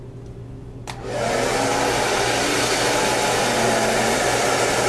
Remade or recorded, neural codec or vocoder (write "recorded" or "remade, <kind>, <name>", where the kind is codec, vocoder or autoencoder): recorded